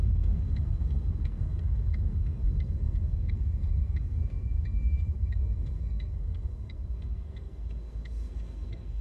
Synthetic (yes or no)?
yes